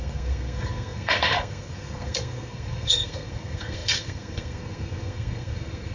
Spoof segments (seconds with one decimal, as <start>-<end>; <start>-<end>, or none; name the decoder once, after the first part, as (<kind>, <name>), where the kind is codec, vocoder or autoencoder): 0.0-5.9 (codec, SNAC)